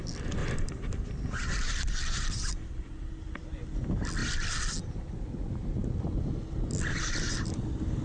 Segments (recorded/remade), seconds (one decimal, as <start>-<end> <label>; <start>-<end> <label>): 0.0-0.4 recorded; 0.4-2.5 remade; 2.5-8.0 recorded